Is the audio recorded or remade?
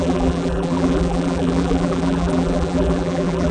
remade